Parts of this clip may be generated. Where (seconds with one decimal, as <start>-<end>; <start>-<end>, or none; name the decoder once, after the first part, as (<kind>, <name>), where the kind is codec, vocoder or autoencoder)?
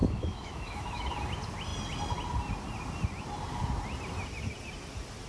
0.0-1.1 (autoencoder, DAC-VAE)